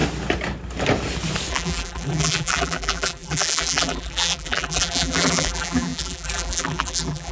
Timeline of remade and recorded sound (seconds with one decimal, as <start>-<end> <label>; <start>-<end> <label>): 0.0-1.5 recorded; 1.5-7.3 remade